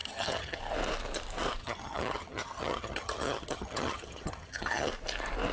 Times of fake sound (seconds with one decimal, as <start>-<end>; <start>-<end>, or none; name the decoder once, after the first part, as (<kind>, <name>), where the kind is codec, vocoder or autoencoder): 0.0-0.6 (vocoder, HiFi-GAN); 1.6-4.9

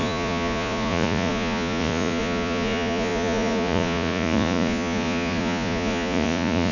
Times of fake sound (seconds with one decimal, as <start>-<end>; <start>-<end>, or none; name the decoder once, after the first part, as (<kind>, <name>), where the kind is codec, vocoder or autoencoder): 0.0-6.7 (vocoder, Vocos)

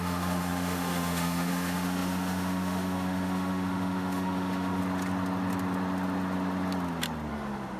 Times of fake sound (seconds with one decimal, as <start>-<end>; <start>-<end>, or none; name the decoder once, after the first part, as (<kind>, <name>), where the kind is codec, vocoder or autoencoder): 0.0-4.8 (autoencoder, DAC-VAE); 7.3-7.8

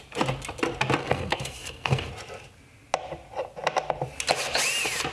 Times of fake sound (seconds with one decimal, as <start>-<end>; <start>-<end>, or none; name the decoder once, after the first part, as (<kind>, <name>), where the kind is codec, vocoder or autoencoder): 1.0-2.1 (codec, SNAC)

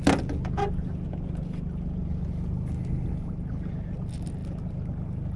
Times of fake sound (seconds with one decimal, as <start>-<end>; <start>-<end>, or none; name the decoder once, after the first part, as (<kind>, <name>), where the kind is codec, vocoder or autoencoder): none

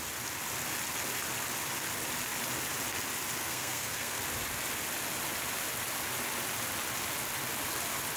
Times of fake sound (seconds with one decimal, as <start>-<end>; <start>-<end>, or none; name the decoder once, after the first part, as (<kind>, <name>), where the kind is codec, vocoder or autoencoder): 3.4-4.2 (codec, SNAC)

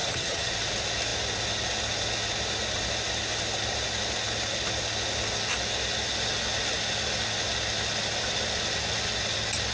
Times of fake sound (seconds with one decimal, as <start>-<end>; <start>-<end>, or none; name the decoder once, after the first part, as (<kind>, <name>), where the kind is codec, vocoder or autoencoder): 0.0-0.5 (vocoder, HiFi-GAN)

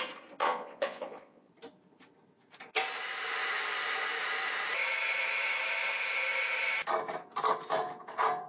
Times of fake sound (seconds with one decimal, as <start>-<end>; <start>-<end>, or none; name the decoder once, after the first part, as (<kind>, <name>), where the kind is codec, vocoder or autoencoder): 0.4-1.5 (vocoder, Vocos)